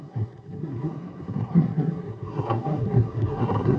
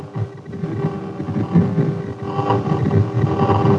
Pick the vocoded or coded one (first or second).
first